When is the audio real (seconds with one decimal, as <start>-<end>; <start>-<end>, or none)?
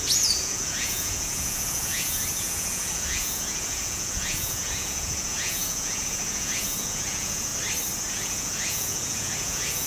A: 7.5-8.1